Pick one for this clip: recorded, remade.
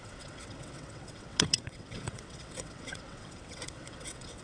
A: remade